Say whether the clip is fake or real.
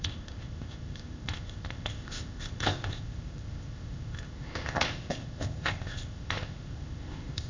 fake